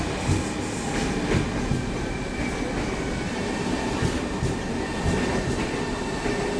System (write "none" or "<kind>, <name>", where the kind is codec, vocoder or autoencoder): none